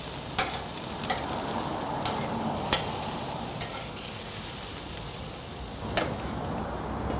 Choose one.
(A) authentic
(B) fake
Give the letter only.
A